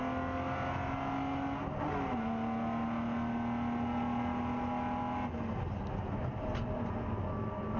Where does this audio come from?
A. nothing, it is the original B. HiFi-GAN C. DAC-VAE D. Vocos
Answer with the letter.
A